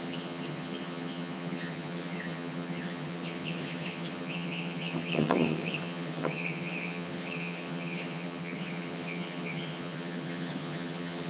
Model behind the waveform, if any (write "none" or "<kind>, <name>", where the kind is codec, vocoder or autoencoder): vocoder, HiFi-GAN